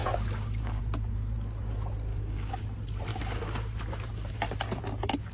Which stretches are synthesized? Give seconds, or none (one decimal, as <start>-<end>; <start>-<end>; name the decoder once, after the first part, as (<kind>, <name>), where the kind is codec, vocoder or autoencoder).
0.0-0.8 (codec, DAC); 2.1-2.6; 3.1-3.7